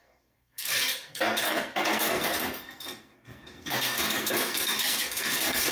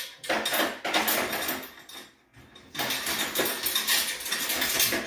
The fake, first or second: first